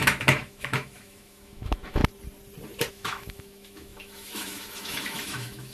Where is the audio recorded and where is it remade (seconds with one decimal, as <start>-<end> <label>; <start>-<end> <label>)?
0.0-2.0 remade; 2.0-2.9 recorded; 2.9-5.7 remade